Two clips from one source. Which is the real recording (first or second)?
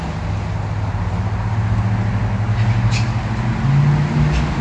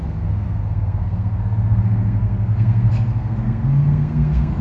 first